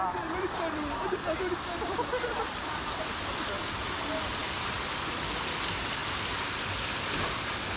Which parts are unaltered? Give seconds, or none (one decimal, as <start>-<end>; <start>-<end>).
0.0-7.8